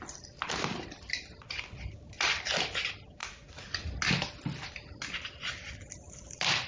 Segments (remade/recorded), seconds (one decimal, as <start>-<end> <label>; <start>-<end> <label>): 0.0-3.2 recorded; 3.2-3.9 remade; 3.9-6.7 recorded